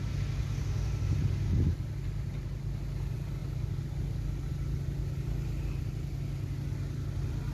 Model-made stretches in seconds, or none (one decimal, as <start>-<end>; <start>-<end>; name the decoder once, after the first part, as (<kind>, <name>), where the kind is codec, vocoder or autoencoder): none